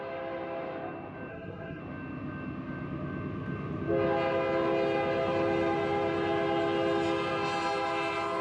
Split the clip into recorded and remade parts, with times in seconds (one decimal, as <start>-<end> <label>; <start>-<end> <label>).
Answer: 0.0-1.3 recorded; 1.3-1.8 remade; 1.8-8.4 recorded